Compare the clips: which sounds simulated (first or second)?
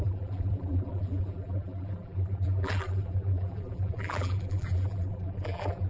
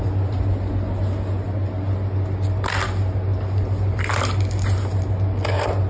first